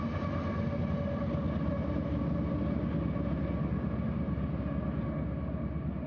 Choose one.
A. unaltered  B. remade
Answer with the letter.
A